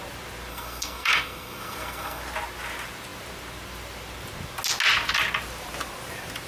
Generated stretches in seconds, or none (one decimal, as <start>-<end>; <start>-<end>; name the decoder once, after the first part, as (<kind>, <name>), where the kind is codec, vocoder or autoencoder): 0.5-2.2 (codec, SNAC)